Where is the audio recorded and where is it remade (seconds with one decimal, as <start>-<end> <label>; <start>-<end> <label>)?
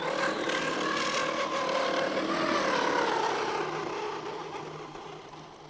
0.0-5.7 recorded